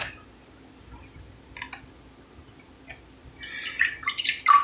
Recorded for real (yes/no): yes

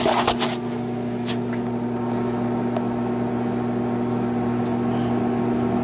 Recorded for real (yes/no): yes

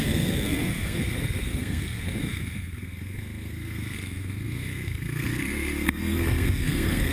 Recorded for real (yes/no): no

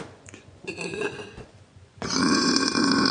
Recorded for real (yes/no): no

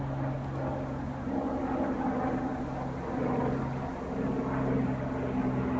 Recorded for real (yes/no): yes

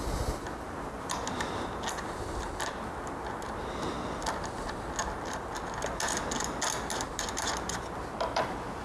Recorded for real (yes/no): yes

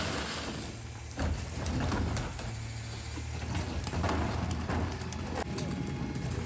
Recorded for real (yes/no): yes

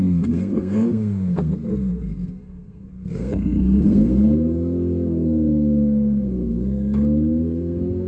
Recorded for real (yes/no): no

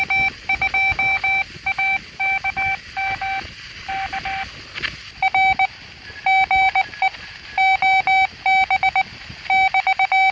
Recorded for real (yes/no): yes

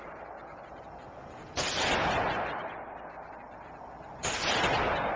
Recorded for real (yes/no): yes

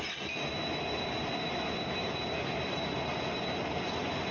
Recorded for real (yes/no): yes